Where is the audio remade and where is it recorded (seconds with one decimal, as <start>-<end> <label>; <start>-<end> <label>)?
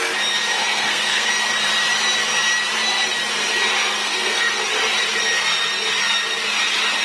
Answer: 0.0-0.6 recorded; 0.6-1.3 remade; 1.3-4.0 recorded; 4.0-4.6 remade; 4.6-7.0 recorded